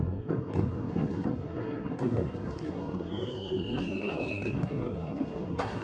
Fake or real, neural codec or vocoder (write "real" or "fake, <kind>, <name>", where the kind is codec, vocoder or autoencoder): fake, codec, SNAC